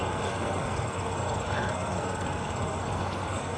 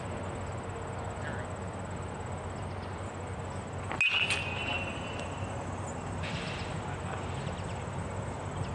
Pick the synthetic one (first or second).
first